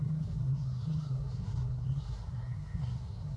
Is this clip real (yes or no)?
no